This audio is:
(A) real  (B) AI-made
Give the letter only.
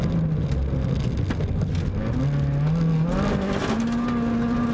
A